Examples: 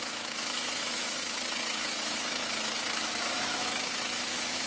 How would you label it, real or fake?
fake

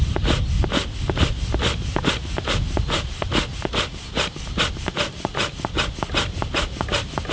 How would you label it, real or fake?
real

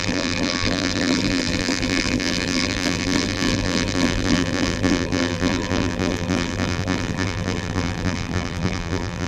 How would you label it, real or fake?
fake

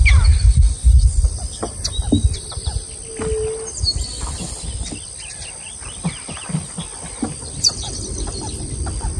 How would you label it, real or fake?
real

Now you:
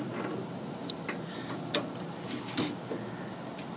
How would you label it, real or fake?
real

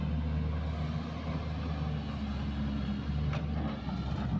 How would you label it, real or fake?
real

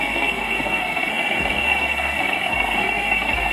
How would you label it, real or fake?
fake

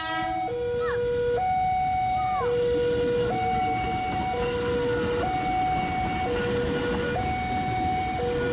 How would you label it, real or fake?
real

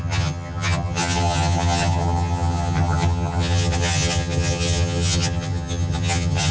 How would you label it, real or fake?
fake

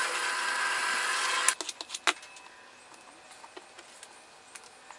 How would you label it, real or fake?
real